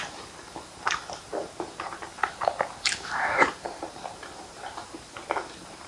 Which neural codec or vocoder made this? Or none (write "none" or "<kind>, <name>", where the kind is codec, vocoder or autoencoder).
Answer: vocoder, BigVGAN v2